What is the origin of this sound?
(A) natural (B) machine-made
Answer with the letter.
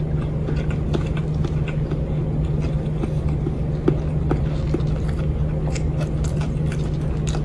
A